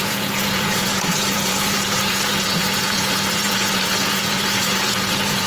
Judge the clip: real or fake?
fake